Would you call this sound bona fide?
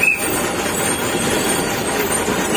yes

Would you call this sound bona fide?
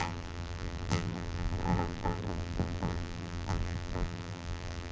no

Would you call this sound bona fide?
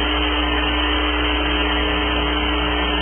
yes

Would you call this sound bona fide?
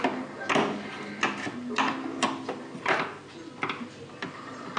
yes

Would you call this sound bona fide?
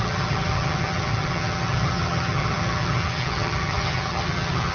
no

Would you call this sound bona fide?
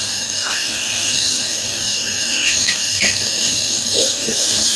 no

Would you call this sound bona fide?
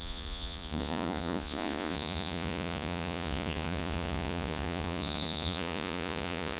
no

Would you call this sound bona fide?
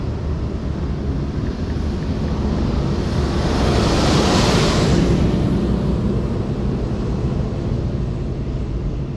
yes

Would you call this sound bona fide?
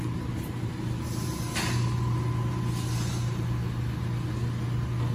yes